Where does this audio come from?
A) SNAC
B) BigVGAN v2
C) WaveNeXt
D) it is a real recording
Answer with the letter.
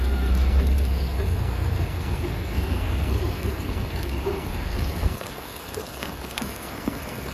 A